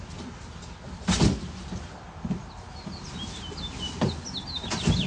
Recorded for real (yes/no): yes